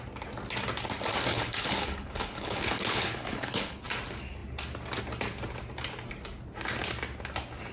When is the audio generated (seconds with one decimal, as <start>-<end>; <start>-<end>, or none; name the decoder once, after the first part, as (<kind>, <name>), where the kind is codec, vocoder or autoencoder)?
1.3-3.8 (codec, HILCodec)